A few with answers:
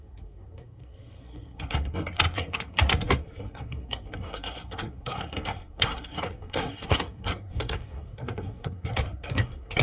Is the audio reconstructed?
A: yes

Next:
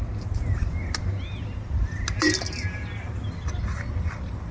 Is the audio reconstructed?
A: no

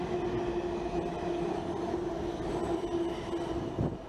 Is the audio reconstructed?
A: no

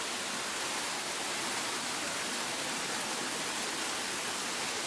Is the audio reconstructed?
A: no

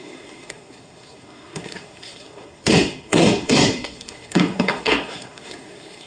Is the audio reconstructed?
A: yes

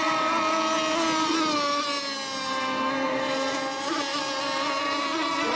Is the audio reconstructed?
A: no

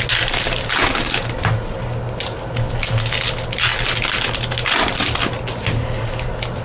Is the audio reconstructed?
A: no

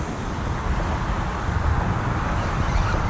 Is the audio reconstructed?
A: no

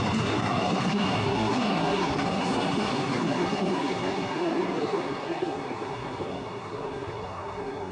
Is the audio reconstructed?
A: yes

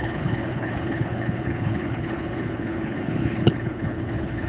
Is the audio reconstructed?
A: yes